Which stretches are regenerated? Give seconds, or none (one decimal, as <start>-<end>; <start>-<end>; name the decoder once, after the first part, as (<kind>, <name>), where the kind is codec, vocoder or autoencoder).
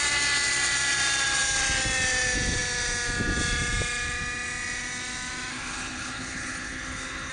5.5-7.3 (codec, HILCodec)